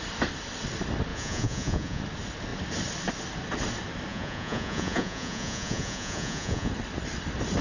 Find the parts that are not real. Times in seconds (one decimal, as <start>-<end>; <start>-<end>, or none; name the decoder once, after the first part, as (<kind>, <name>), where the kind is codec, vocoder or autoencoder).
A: 1.1-2.0 (vocoder, Vocos); 4.1-6.7